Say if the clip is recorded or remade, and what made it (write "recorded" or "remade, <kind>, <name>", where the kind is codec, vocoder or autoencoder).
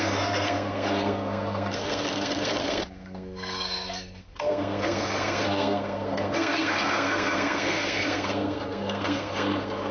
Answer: remade, codec, SNAC